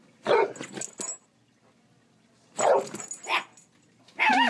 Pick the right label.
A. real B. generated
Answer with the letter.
A